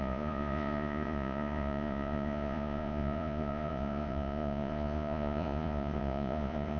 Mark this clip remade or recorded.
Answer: remade